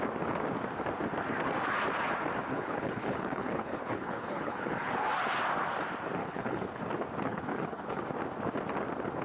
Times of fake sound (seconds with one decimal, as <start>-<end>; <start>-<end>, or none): 2.5-5.0; 6.2-6.8; 7.3-8.0